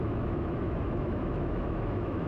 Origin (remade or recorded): remade